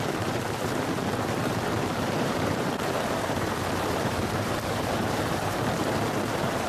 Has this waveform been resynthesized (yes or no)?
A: yes